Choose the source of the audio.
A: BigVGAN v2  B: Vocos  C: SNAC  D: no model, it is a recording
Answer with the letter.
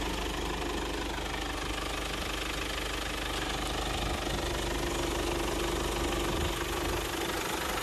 D